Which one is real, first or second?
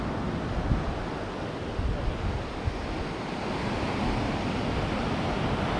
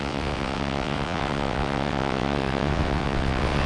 first